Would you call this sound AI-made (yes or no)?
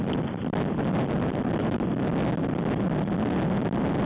no